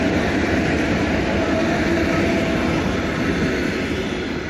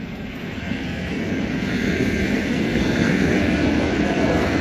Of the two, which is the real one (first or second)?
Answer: first